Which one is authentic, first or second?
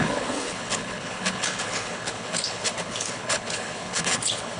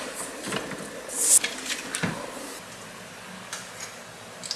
second